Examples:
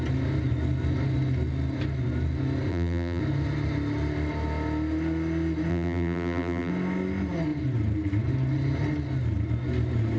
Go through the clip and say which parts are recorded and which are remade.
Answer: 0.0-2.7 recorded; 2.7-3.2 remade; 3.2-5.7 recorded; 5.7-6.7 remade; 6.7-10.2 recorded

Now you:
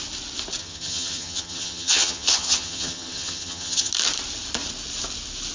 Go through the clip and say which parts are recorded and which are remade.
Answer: 0.0-0.6 recorded; 0.6-3.9 remade; 3.9-5.5 recorded

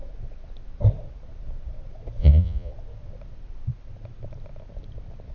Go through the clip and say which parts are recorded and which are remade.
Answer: 0.0-2.2 recorded; 2.2-2.7 remade; 2.7-5.3 recorded

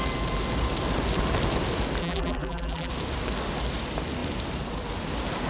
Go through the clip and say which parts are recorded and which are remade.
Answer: 0.0-2.0 recorded; 2.0-2.9 remade; 2.9-5.5 recorded

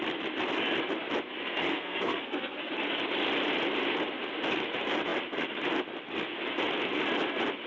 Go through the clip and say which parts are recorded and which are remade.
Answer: 0.0-1.7 recorded; 1.7-2.7 remade; 2.7-7.7 recorded

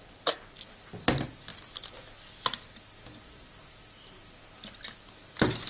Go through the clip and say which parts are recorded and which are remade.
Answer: 0.0-5.7 recorded

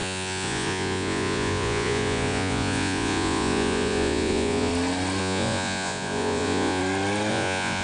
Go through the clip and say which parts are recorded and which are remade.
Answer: 0.0-4.7 remade; 4.7-5.2 recorded; 5.2-6.8 remade; 6.8-7.3 recorded; 7.3-7.8 remade

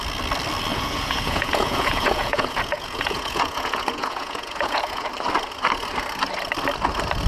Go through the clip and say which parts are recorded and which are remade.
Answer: 0.0-0.7 recorded; 0.7-5.1 remade; 5.1-7.3 recorded